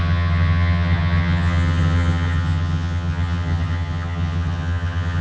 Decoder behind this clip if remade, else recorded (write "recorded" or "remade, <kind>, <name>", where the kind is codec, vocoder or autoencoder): remade, vocoder, HiFi-GAN